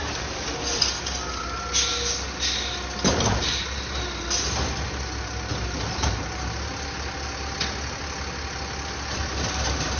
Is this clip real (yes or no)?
yes